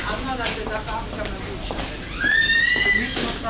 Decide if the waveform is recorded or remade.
recorded